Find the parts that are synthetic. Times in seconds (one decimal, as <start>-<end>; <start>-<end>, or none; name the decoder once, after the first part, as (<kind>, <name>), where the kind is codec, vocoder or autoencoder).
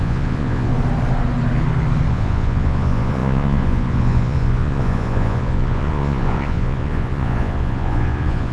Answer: 0.0-0.7 (vocoder, Vocos); 2.1-8.5